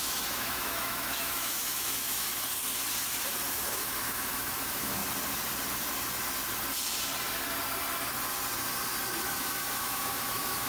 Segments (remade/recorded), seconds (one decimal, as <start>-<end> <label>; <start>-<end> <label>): 0.0-2.3 remade; 2.3-3.5 recorded; 3.5-5.0 remade; 5.0-9.2 recorded; 9.2-10.7 remade